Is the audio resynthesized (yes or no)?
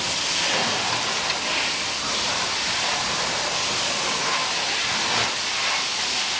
no